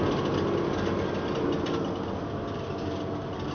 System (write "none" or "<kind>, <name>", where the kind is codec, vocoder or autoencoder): none